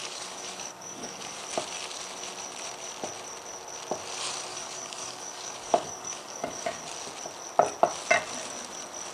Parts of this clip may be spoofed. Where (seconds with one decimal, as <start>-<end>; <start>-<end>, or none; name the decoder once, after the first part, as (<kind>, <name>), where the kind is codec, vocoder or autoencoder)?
0.0-1.4 (codec, DAC); 4.5-6.8